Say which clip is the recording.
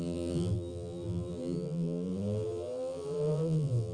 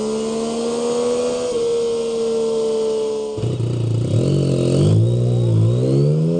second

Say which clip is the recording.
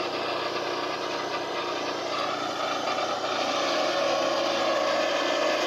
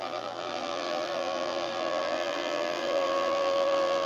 first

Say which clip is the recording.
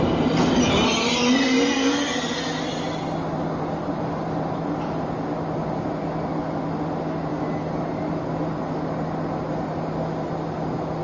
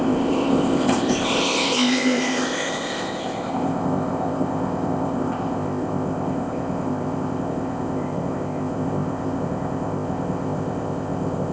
first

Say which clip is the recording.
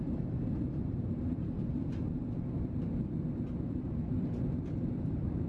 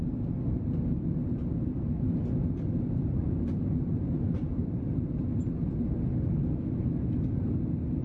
second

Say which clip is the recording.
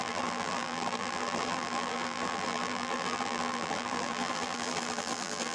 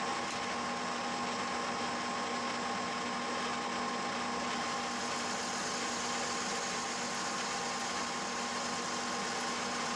second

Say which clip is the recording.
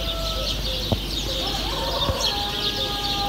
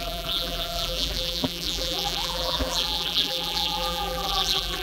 first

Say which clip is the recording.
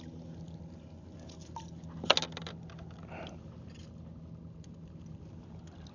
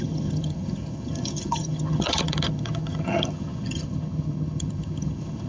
first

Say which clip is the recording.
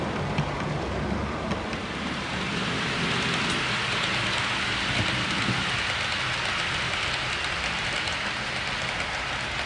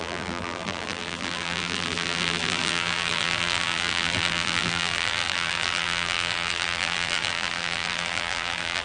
first